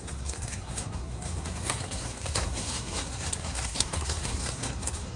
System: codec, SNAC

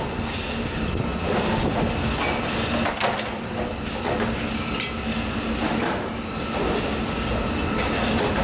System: none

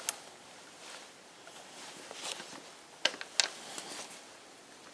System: none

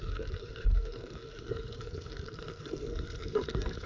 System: codec, SNAC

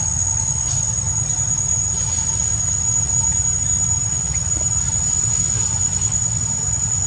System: none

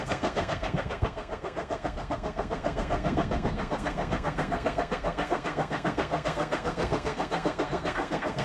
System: codec, SNAC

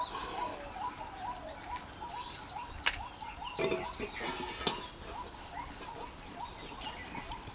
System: none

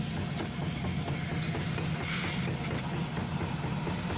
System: none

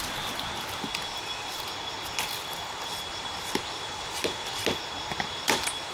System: none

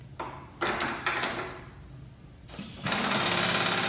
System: none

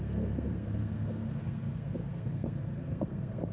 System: codec, SNAC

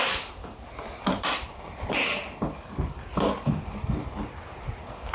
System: none